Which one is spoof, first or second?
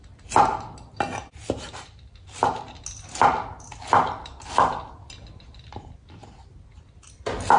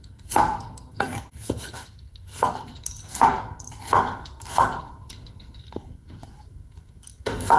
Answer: second